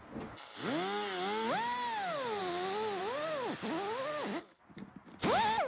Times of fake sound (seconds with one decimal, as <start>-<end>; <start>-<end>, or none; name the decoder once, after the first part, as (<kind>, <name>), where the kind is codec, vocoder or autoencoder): none